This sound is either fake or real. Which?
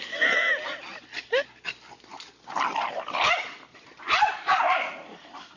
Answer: real